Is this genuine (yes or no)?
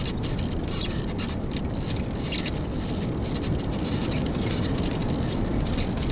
yes